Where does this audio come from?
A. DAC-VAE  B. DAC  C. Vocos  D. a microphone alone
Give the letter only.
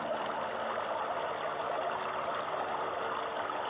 D